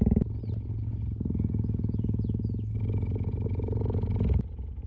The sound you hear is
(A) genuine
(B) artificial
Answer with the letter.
A